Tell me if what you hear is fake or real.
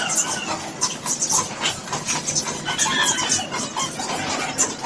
real